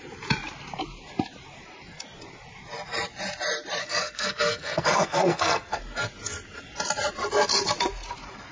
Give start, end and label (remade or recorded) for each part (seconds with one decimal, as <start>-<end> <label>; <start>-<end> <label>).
0.0-3.8 recorded; 3.8-5.8 remade; 5.8-8.5 recorded